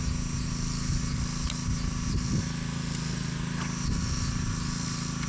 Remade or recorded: recorded